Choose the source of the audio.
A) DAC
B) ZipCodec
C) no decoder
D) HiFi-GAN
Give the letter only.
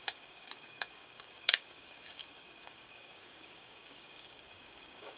A